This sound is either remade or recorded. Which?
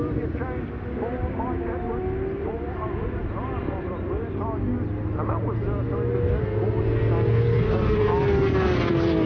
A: recorded